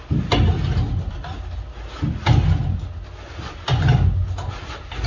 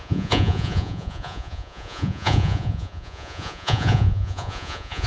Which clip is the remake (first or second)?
second